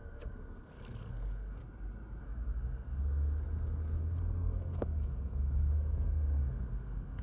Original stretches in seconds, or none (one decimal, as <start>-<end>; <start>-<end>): 1.6-2.2